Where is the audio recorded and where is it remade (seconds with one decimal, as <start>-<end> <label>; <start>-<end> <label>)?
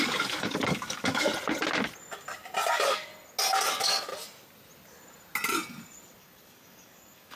0.0-1.3 remade; 1.3-2.7 recorded; 2.7-3.1 remade; 3.1-3.6 recorded; 3.6-4.1 remade; 4.1-6.2 recorded; 6.2-7.4 remade